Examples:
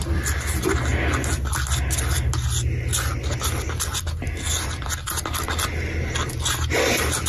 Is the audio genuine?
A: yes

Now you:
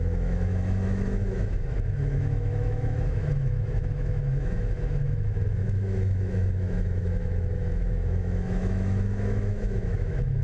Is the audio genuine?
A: no